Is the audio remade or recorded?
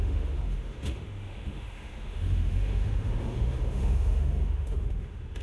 remade